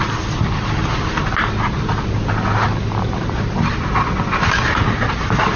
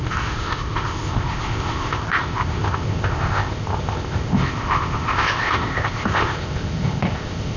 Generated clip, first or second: second